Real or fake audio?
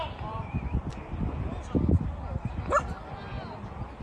real